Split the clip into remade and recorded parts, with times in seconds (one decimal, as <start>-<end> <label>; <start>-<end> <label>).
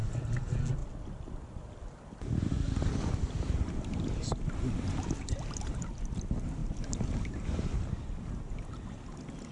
0.0-0.8 remade; 0.8-1.3 recorded; 1.3-9.5 remade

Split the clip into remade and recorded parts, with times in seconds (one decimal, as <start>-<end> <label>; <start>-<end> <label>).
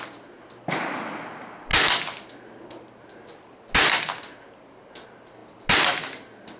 0.0-6.6 recorded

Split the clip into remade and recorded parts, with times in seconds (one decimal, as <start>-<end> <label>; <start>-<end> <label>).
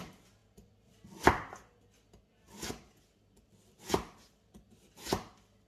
0.0-5.7 recorded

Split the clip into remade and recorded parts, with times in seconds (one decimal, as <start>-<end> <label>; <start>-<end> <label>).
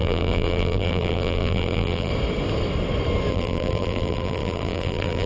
0.0-2.1 remade; 2.1-3.3 recorded; 3.3-5.3 remade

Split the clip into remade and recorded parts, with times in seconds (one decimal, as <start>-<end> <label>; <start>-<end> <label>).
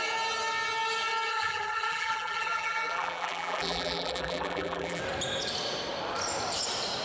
0.0-1.3 recorded; 1.3-5.0 remade; 5.0-7.0 recorded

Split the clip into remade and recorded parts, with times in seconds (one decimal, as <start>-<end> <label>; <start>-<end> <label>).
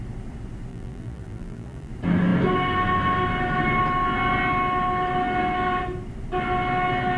0.0-0.7 recorded; 0.7-1.9 remade; 1.9-7.2 recorded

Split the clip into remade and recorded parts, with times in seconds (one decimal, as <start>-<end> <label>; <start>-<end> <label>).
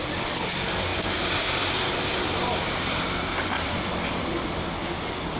0.0-0.9 recorded; 0.9-3.8 remade; 3.8-5.4 recorded